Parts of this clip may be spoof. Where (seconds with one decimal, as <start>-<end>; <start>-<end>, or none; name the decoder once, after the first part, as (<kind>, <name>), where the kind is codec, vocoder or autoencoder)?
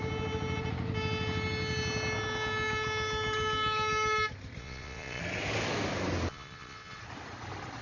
4.6-5.2 (vocoder, Vocos); 6.3-7.0